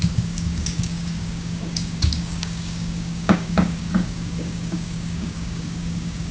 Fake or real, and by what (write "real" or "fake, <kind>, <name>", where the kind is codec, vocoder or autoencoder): fake, codec, DAC